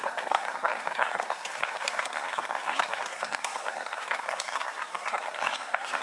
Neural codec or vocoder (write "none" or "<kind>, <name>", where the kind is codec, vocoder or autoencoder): codec, SNAC